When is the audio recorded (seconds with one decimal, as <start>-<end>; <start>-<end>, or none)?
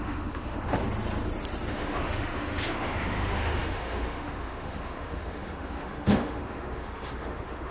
0.8-1.7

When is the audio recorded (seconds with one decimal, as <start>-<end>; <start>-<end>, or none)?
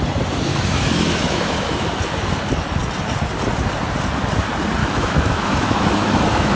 0.0-0.5; 2.0-4.8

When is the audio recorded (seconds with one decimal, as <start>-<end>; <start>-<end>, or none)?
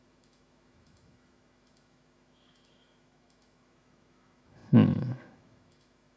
none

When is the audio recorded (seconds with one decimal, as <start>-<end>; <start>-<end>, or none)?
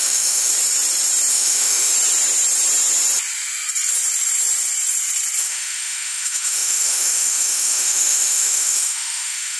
0.5-1.3; 1.9-5.4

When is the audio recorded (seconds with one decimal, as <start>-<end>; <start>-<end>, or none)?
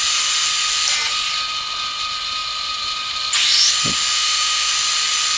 0.0-4.1; 4.7-5.4